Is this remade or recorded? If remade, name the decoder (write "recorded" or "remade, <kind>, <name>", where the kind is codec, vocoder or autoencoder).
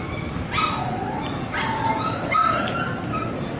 recorded